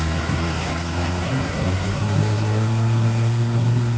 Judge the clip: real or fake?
fake